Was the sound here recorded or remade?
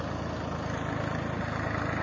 recorded